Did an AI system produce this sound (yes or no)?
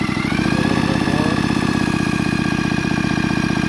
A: yes